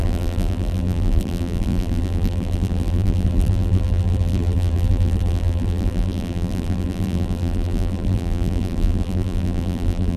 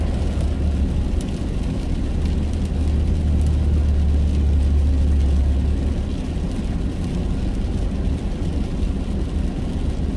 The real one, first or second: second